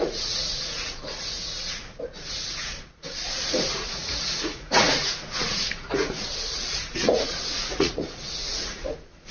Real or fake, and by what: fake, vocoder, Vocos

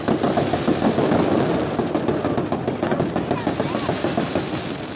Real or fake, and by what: real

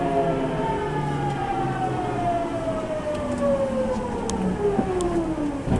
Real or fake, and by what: real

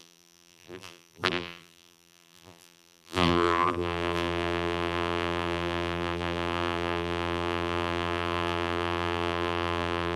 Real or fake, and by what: fake, vocoder, BigVGAN v2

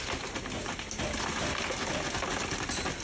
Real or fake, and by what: real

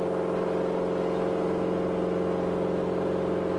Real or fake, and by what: real